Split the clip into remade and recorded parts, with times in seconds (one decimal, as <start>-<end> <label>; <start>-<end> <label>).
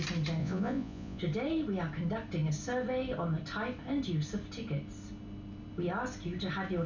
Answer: 0.0-0.4 recorded; 0.4-1.2 remade; 1.2-6.9 recorded